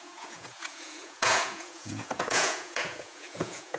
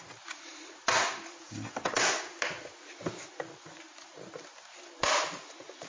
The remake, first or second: first